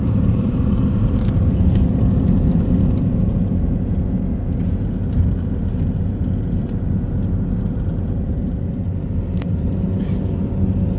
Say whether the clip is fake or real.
real